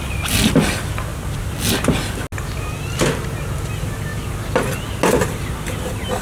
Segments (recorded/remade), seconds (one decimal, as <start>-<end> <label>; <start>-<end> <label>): 0.0-6.2 recorded